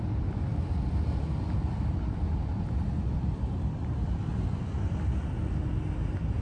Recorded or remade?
remade